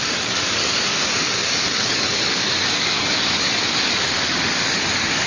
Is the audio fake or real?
fake